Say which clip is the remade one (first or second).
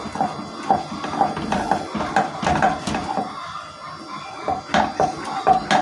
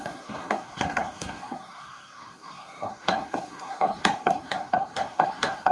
second